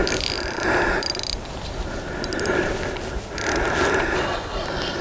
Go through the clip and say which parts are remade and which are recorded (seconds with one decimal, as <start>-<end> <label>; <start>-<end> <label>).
0.0-5.0 recorded